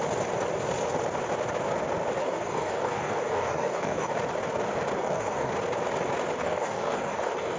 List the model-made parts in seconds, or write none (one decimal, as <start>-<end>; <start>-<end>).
2.2-4.1; 5.0-5.5; 6.4-7.6